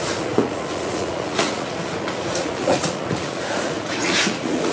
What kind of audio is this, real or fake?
fake